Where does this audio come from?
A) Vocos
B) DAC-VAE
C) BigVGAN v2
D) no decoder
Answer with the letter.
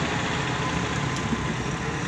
D